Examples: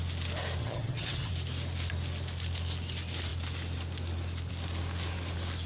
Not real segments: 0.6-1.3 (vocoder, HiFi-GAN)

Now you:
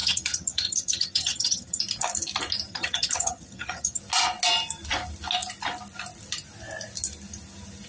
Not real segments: 0.0-1.8 (vocoder, HiFi-GAN); 2.7-4.0

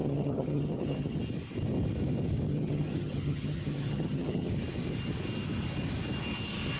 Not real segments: 0.0-1.2 (vocoder, HiFi-GAN); 2.5-4.5

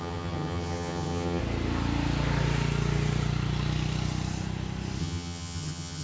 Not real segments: 0.0-1.4 (vocoder, HiFi-GAN); 5.0-6.0

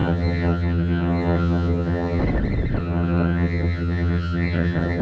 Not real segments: 0.0-2.2 (vocoder, HiFi-GAN); 2.8-5.0

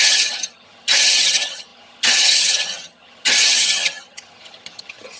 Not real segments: 0.0-5.2 (vocoder, HiFi-GAN)

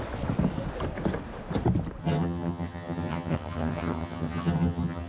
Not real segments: 2.0-5.1 (vocoder, HiFi-GAN)

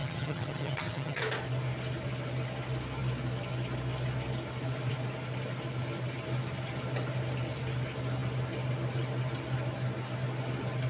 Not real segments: 0.0-1.2 (vocoder, HiFi-GAN)